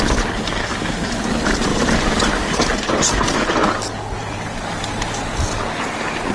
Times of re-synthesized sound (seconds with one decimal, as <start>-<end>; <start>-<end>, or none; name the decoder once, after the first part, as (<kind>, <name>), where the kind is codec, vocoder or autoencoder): 1.7-3.7 (vocoder, BigVGAN v2); 4.2-4.9